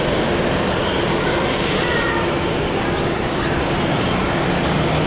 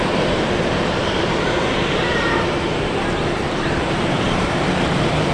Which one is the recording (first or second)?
first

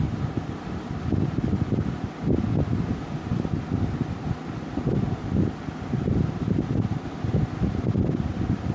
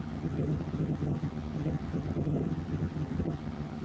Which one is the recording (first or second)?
first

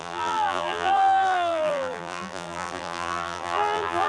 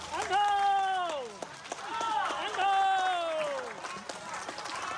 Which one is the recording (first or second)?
second